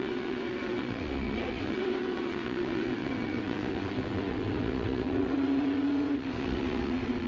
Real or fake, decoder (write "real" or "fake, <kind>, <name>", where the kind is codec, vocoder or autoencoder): fake, vocoder, WaveNeXt